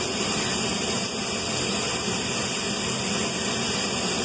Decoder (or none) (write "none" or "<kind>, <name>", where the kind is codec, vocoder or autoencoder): none